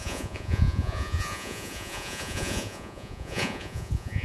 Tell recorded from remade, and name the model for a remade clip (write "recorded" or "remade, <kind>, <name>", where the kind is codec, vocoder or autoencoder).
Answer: remade, vocoder, Vocos